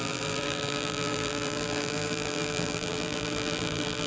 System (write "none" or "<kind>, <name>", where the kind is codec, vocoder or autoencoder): vocoder, BigVGAN v2